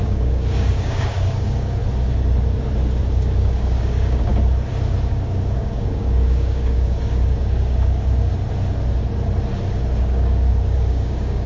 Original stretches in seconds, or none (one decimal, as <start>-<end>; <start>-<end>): 1.8-3.0; 4.3-5.1; 8.3-10.0